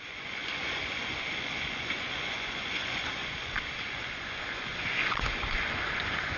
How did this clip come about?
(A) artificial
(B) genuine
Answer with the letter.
A